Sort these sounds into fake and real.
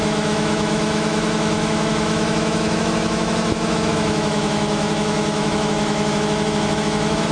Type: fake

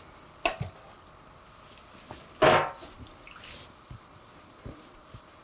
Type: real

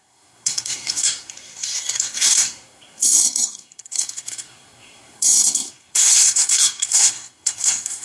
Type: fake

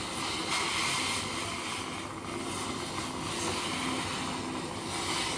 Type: real